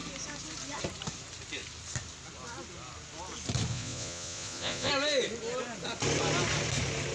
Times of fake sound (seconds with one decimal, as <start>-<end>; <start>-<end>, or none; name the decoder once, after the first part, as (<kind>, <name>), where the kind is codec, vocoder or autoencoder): 3.7-4.9 (vocoder, Vocos)